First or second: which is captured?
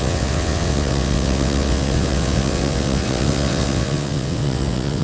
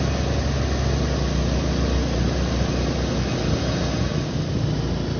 second